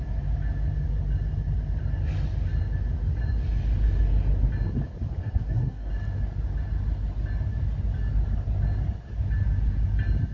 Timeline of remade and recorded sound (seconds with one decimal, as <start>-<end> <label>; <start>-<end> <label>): 0.0-5.2 recorded; 5.2-5.9 remade; 5.9-10.3 recorded